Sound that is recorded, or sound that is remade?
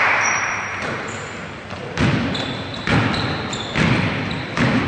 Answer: remade